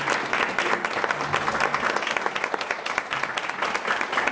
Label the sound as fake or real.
real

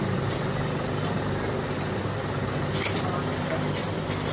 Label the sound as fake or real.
real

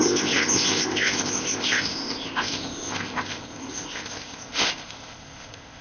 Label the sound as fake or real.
fake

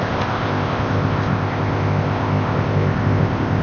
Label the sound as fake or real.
fake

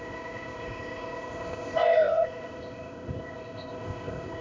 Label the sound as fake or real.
fake